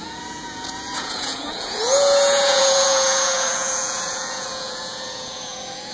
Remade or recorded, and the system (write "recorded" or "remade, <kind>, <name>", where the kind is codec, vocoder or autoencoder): remade, vocoder, Vocos